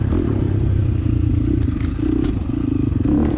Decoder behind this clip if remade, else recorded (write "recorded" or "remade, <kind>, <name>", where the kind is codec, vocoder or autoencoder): recorded